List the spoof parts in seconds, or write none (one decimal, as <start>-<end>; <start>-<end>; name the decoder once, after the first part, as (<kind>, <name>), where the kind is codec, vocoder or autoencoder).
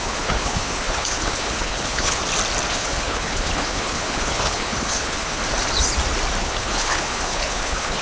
0.0-2.2 (codec, HILCodec); 2.7-5.4; 6.4-8.0